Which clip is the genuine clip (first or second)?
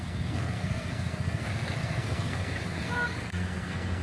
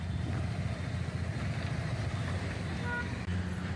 second